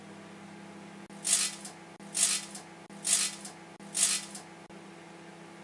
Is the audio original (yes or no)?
yes